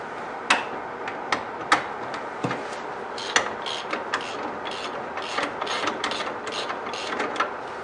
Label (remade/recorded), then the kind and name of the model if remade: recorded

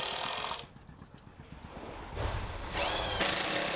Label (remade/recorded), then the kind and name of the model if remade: recorded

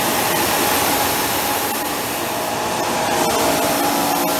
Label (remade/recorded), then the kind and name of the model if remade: recorded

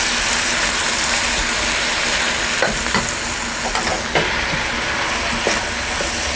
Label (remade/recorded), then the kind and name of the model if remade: recorded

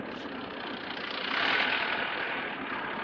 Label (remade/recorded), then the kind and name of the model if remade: recorded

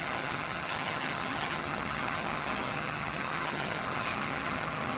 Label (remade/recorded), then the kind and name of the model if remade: remade, vocoder, HiFi-GAN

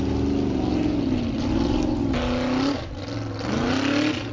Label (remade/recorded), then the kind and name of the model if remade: recorded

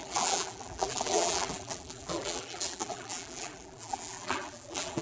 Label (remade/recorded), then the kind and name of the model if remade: remade, vocoder, BigVGAN v2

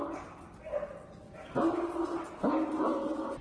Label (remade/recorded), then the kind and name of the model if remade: recorded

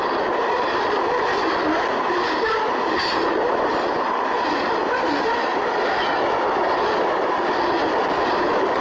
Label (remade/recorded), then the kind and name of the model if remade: recorded